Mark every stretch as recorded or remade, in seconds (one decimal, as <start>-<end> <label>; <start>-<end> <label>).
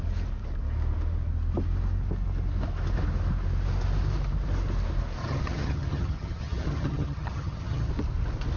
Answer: 0.0-5.2 recorded; 5.2-7.9 remade; 7.9-8.6 recorded